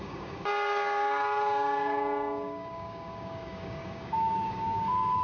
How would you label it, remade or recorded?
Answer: remade